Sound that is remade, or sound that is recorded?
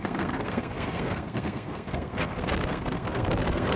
remade